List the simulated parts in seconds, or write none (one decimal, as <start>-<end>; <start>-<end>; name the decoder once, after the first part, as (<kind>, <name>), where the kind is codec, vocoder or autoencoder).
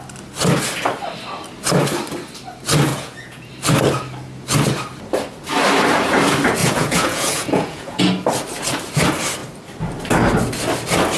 2.9-3.5 (vocoder, Vocos); 6.6-8.0